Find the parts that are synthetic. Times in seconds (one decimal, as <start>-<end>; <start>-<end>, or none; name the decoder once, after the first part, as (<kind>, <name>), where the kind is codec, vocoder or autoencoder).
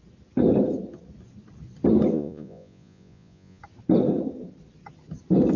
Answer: 2.1-3.6 (vocoder, Vocos)